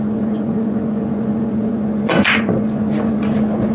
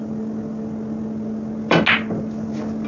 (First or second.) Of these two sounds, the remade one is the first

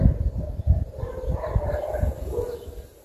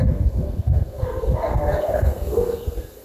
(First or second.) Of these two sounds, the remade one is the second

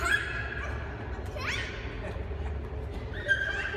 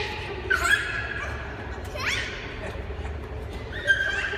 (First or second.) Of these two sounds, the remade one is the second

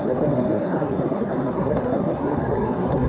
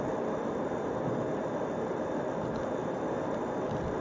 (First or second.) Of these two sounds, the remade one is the first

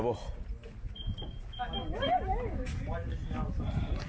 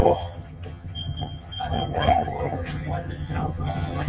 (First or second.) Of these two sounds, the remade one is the second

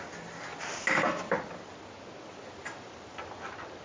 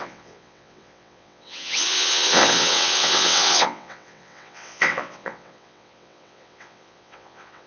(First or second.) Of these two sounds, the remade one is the second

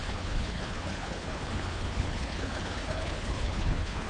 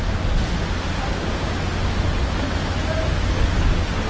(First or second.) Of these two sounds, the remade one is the first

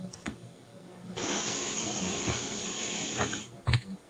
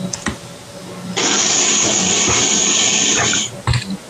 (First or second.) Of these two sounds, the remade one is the first